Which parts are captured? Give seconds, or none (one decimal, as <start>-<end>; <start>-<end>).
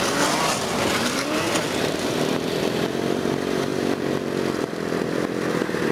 3.7-4.6